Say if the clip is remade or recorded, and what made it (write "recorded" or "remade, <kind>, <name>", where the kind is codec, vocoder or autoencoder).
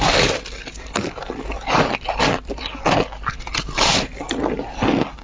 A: remade, vocoder, BigVGAN v2